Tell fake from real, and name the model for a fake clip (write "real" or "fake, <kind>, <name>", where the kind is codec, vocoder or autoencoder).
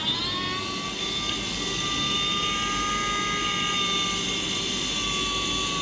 real